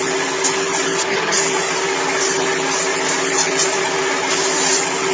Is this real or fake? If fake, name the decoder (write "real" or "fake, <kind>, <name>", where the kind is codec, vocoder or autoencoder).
real